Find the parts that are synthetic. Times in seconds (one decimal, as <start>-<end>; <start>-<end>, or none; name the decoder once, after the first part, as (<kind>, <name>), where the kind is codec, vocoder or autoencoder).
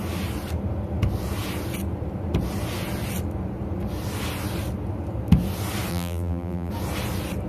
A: 5.9-6.7 (vocoder, BigVGAN v2)